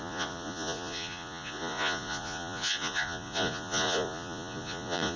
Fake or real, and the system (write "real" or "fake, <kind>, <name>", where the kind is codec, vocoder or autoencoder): fake, vocoder, Vocos